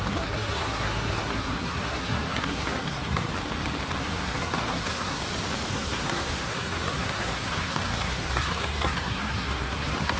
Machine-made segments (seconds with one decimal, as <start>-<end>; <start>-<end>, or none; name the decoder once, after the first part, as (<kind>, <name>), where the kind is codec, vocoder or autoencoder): 0.0-3.3 (codec, SNAC); 4.0-5.2; 5.7-10.2